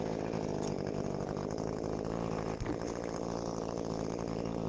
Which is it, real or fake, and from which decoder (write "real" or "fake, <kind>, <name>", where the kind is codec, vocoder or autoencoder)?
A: real